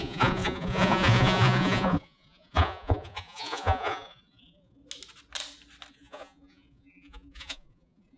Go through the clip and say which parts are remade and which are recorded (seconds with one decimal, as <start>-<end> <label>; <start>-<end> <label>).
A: 0.0-4.8 remade; 4.8-5.9 recorded; 5.9-8.2 remade